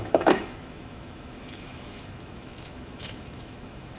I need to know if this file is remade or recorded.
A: remade